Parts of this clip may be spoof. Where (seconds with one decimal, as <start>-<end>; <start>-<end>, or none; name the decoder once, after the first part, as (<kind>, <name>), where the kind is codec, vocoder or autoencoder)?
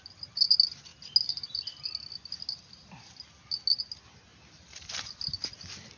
none